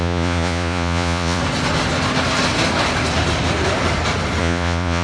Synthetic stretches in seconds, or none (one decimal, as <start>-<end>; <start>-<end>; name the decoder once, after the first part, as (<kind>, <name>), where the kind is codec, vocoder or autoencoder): 0.0-1.4 (vocoder, Vocos); 4.4-5.0